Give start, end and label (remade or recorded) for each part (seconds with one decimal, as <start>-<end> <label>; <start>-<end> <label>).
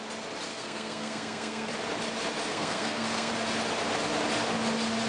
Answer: 0.0-0.5 recorded; 0.5-1.7 remade; 1.7-2.5 recorded; 2.5-3.3 remade; 3.3-5.1 recorded